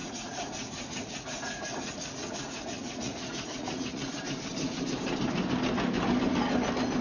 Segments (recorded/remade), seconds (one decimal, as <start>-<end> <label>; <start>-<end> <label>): 0.0-4.2 remade; 4.2-7.0 recorded